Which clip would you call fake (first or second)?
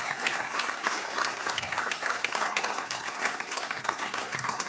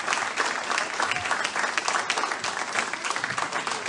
first